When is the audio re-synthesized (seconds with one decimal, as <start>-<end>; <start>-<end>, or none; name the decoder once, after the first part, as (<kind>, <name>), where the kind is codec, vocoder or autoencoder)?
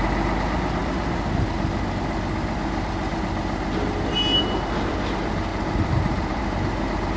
5.5-6.4 (vocoder, BigVGAN v2)